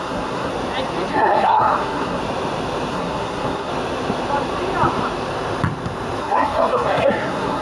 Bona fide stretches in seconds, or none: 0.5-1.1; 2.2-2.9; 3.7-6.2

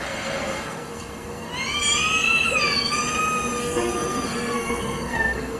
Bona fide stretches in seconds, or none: 1.5-3.6

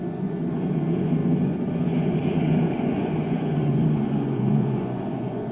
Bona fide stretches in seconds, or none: none

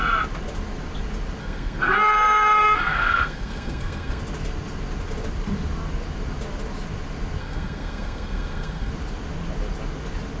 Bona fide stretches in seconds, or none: 0.0-1.4; 4.2-7.4; 8.9-10.4